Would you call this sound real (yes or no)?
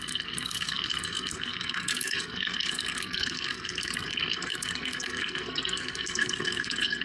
no